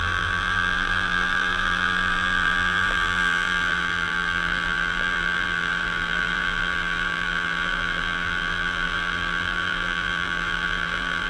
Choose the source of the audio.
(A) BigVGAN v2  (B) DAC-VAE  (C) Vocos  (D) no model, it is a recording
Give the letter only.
A